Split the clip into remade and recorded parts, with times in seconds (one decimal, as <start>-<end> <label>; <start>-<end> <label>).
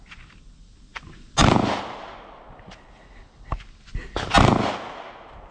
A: 0.0-5.5 recorded